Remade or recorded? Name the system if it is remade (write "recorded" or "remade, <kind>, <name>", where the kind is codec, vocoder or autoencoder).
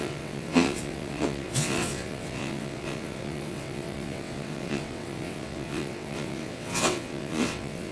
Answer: remade, vocoder, WaveNeXt